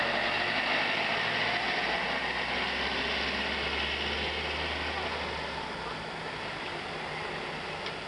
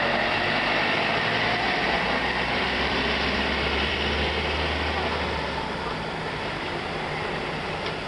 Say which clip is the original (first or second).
first